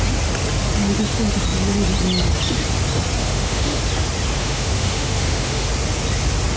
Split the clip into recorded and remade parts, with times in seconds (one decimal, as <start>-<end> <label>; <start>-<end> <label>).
0.0-3.2 recorded; 3.2-3.8 remade; 3.8-4.4 recorded; 4.4-5.7 remade; 5.7-6.6 recorded